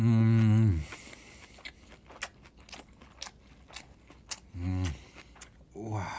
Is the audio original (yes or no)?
yes